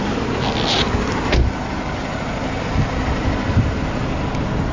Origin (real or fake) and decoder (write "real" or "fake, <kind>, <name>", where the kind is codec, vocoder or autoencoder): real